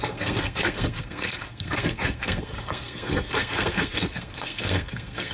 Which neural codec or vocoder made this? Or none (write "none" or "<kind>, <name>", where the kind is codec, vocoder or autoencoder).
codec, SNAC